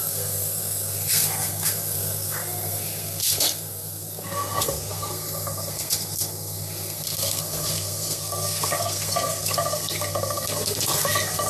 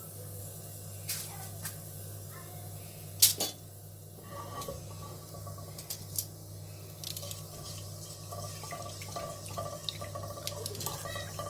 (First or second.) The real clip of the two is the second